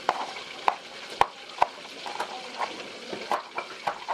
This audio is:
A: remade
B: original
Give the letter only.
B